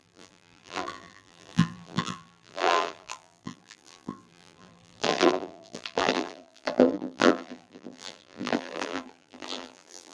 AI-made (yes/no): yes